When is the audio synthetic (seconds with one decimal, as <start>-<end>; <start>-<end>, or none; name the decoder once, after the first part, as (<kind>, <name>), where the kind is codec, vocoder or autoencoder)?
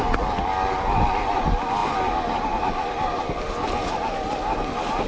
none